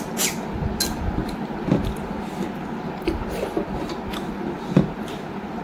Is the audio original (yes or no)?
yes